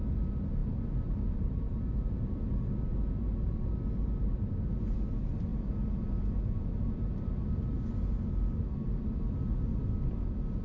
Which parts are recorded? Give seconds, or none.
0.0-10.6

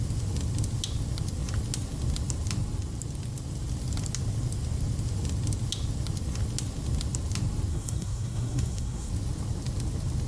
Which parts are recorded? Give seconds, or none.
0.0-7.7; 9.1-10.3

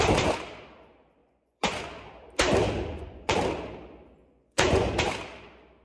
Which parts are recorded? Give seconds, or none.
0.0-1.2; 1.8-2.9; 3.4-4.2; 4.9-5.8

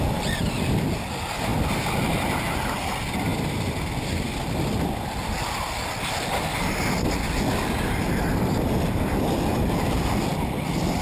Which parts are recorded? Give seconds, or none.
0.0-11.0